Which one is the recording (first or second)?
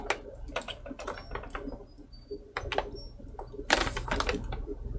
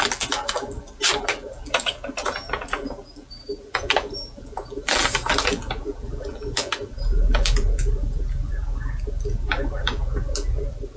first